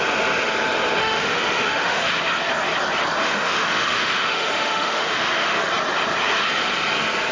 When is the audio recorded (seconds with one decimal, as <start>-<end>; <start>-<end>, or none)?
0.0-1.0; 2.1-3.2; 5.7-7.3

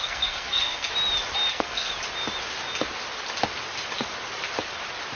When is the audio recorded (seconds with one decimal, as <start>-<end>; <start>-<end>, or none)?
0.9-1.5; 1.9-5.2

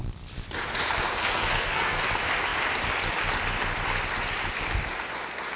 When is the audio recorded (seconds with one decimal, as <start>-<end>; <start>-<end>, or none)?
0.0-1.2; 2.1-5.6

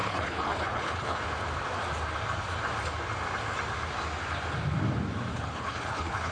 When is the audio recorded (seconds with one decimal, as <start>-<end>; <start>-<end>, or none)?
1.2-5.3

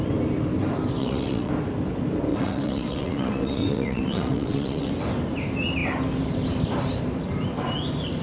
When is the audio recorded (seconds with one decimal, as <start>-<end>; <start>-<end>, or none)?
0.0-1.0; 1.5-2.3; 4.9-8.2

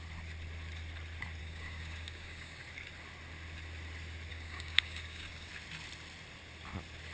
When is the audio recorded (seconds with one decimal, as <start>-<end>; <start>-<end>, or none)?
0.0-1.4; 2.6-4.3; 5.5-7.1

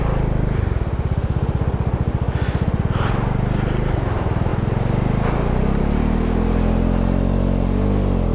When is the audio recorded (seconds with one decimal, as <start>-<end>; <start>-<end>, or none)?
0.0-8.3